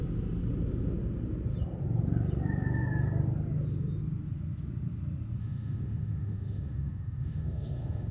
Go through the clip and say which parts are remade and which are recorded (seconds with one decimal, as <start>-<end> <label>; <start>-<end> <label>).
0.0-5.4 recorded; 5.4-8.1 remade